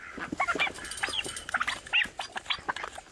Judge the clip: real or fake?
real